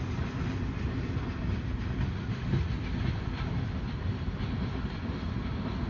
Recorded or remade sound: remade